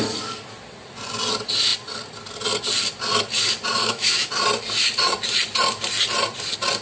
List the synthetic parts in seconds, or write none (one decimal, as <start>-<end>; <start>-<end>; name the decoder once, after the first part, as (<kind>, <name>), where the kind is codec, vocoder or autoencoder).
3.8-4.3 (autoencoder, DAC-VAE)